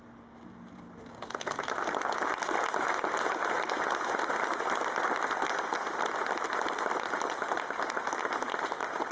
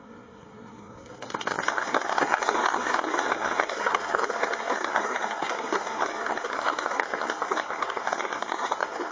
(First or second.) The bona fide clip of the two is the first